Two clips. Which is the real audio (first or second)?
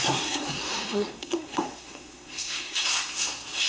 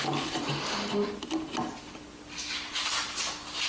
second